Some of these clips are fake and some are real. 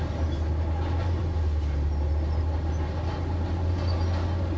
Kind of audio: real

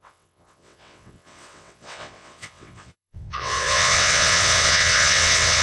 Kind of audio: fake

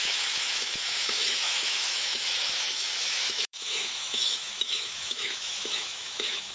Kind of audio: fake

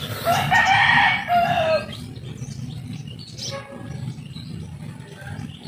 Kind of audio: real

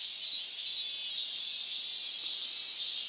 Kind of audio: real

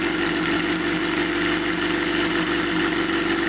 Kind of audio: real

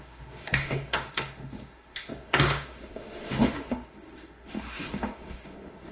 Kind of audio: fake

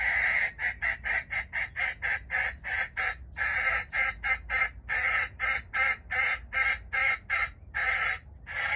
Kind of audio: real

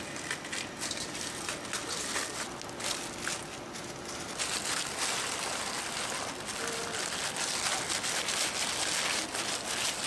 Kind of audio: real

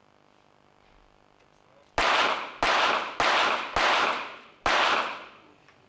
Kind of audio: real